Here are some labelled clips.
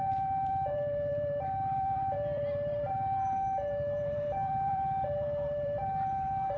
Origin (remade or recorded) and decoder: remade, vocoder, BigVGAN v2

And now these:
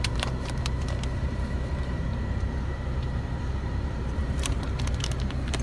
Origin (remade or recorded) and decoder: remade, vocoder, BigVGAN v2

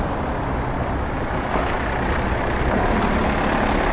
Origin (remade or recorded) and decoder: recorded